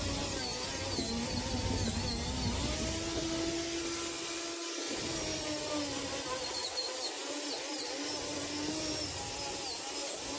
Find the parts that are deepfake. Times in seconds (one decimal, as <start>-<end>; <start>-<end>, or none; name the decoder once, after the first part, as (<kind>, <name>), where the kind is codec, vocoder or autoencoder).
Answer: none